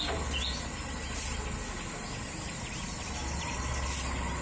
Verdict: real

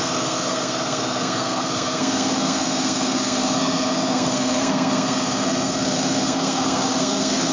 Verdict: fake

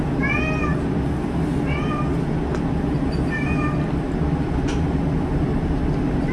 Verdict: real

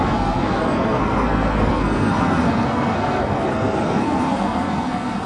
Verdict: fake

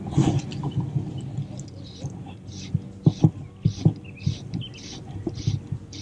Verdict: real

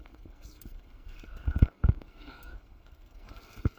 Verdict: fake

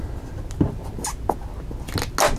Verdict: real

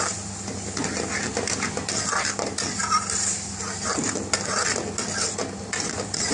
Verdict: real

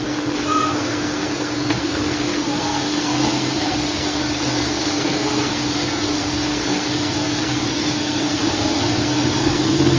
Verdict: fake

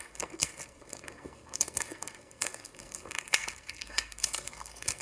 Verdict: fake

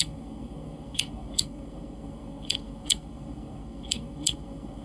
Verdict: fake